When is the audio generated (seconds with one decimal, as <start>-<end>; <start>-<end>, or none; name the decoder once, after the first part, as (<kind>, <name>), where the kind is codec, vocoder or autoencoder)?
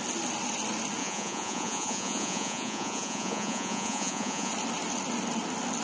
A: 1.0-4.5 (vocoder, Vocos)